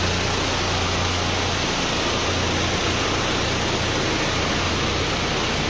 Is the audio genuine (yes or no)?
yes